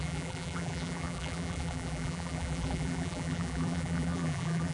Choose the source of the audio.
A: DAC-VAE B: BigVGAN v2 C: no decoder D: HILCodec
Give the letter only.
B